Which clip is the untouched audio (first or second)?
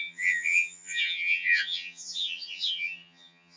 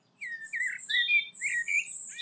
second